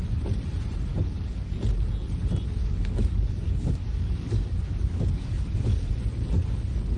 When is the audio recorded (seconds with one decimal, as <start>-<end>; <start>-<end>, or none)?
0.0-0.9; 1.5-2.6; 5.9-7.0